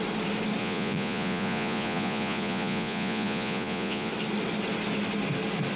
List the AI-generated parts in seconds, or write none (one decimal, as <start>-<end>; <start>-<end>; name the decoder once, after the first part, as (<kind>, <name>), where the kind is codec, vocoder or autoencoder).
0.6-4.1 (vocoder, Vocos)